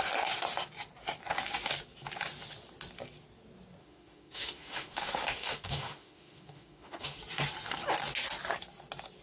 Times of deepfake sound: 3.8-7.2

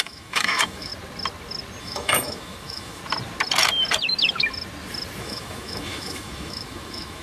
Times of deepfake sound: 0.0-0.9; 1.8-3.0; 5.2-7.2

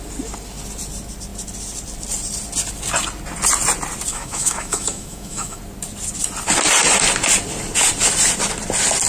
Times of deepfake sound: 4.1-5.6

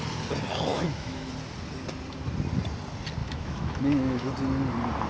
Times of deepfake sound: 0.7-1.3; 3.2-4.3

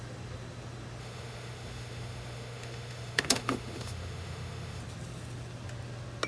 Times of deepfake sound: 1.0-4.8

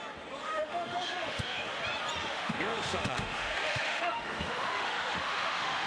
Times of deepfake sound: 0.4-1.8; 2.2-5.9

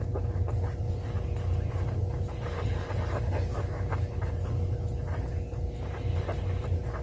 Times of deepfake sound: 3.5-4.2

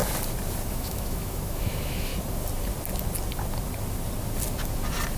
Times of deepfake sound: 0.7-2.1